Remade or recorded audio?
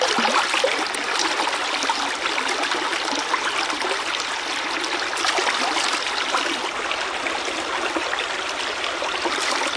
recorded